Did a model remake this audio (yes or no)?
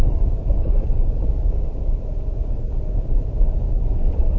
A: yes